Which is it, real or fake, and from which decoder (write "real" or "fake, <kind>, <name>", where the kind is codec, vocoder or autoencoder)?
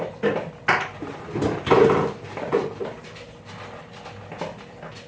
real